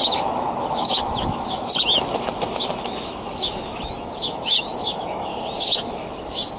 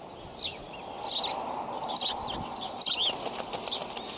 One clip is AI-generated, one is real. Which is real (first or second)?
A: second